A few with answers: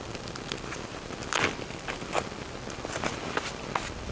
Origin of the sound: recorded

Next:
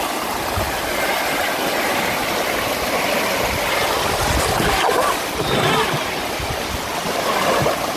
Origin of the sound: recorded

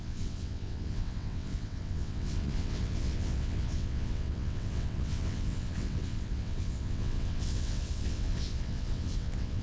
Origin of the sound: remade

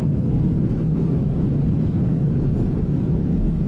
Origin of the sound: remade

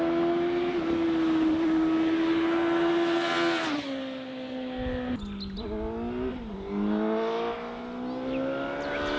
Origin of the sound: recorded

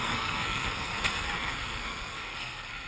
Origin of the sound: remade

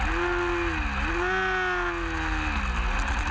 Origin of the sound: recorded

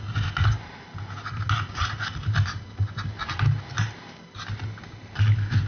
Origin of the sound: recorded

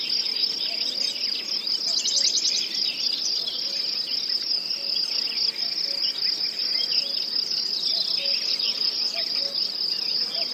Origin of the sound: recorded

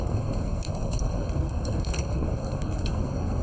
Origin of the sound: remade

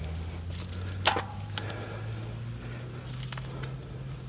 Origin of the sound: recorded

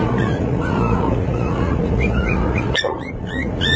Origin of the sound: remade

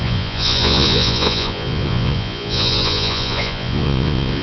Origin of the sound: remade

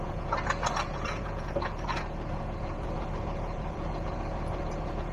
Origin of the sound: remade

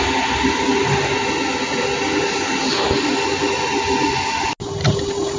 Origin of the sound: recorded